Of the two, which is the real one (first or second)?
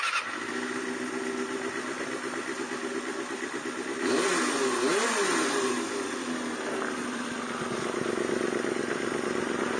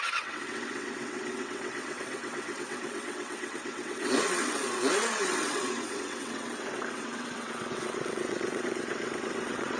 first